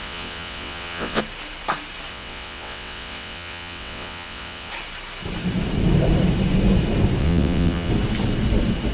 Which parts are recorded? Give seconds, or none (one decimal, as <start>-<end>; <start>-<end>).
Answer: 1.2-2.1; 4.7-7.2; 7.9-8.9